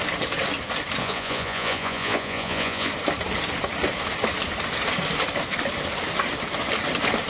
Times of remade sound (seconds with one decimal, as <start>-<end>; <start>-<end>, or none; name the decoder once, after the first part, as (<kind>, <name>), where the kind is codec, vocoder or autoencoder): 1.0-2.9 (vocoder, Vocos)